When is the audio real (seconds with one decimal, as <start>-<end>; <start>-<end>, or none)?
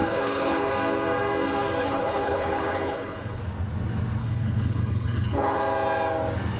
0.7-1.8; 3.4-4.2; 5.6-6.6